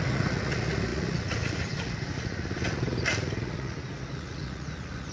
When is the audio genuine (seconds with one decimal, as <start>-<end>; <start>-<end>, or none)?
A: none